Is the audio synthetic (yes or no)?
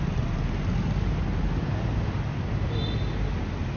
no